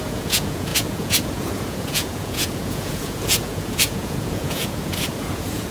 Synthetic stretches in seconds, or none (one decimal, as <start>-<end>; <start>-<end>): 0.0-5.7